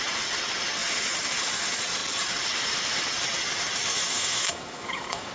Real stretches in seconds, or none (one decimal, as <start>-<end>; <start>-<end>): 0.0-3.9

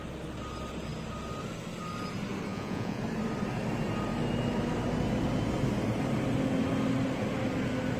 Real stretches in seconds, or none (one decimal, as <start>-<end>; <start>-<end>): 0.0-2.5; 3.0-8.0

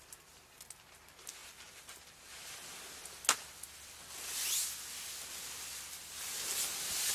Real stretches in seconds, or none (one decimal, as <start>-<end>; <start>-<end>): 0.0-7.1

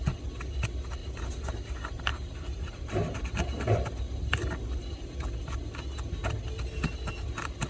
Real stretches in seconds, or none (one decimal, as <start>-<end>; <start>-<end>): 0.0-1.0; 1.5-2.1; 3.2-7.7